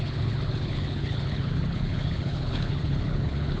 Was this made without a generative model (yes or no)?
no